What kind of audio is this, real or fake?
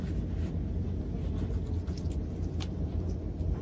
real